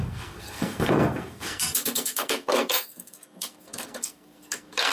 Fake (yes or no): yes